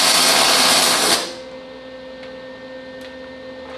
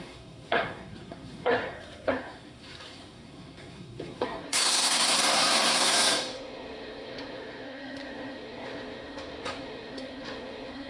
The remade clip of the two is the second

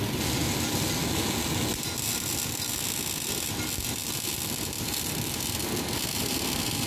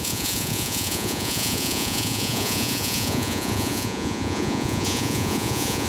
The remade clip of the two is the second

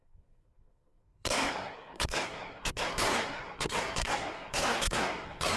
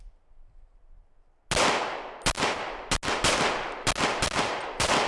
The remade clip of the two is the first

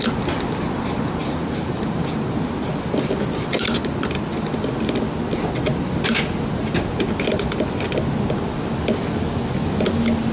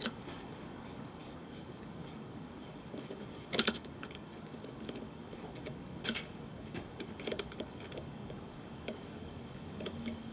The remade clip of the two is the second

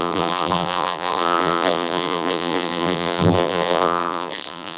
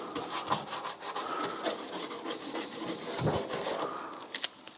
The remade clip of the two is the first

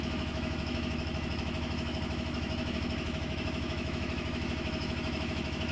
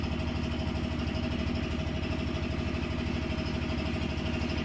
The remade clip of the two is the first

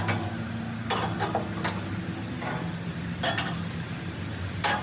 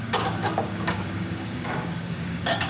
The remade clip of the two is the second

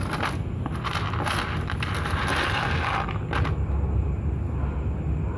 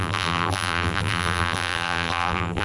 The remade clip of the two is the second